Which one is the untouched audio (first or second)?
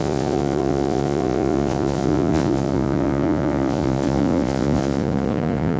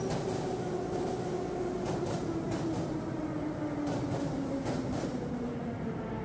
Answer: second